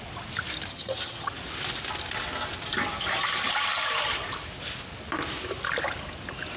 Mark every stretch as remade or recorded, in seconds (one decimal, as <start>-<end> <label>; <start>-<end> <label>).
0.0-0.7 recorded; 0.7-1.3 remade; 1.3-6.6 recorded